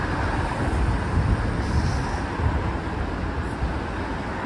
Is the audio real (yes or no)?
yes